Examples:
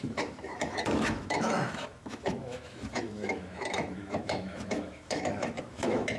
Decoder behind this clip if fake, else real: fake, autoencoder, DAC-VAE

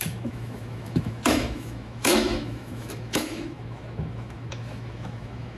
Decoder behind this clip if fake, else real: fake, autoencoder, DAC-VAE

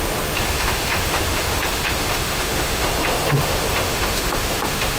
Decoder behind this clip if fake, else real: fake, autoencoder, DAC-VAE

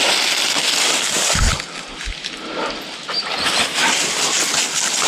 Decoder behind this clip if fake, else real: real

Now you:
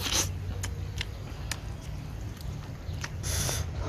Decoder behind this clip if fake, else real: real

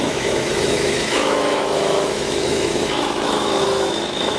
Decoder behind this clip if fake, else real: fake, autoencoder, DAC-VAE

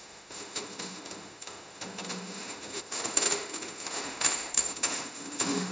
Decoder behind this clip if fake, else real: fake, autoencoder, DAC-VAE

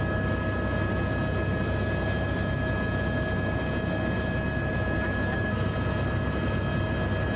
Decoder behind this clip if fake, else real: real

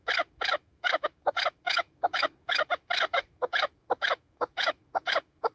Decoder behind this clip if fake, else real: fake, autoencoder, DAC-VAE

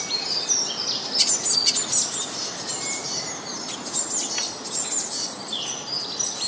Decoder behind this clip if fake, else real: real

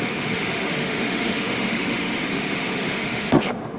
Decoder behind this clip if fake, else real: fake, autoencoder, DAC-VAE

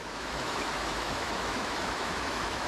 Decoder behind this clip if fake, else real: fake, autoencoder, DAC-VAE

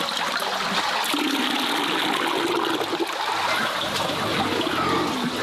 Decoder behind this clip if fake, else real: real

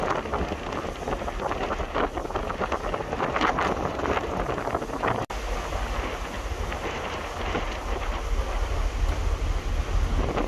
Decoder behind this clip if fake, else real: real